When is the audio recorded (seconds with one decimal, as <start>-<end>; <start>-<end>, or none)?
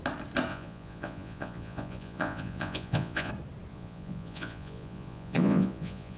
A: 0.0-0.5; 3.3-3.7